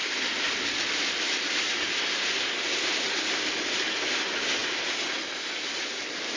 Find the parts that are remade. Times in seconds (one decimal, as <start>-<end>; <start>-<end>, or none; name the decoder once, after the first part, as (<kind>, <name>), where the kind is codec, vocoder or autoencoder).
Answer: 0.0-1.6 (vocoder, BigVGAN v2)